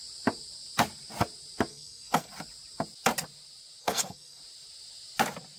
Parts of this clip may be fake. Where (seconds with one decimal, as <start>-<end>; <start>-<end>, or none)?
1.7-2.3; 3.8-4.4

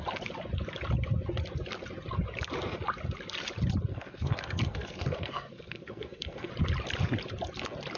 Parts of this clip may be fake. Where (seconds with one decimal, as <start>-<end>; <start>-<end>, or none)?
3.9-6.5

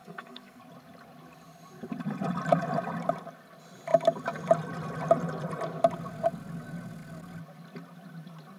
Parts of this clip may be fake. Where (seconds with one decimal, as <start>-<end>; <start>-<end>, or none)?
0.0-0.6

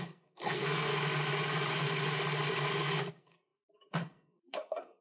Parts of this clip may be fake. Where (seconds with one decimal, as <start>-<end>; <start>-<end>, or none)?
0.0-0.9; 3.1-5.0

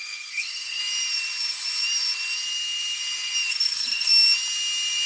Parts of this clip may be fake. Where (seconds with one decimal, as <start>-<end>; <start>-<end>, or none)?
0.0-0.8; 3.5-4.1

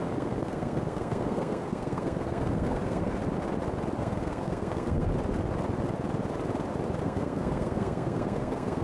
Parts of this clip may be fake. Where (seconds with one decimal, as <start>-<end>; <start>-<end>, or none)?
0.0-3.2; 4.0-5.1; 7.0-8.8

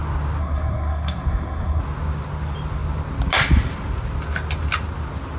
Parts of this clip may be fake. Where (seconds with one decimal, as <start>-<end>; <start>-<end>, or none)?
0.4-1.8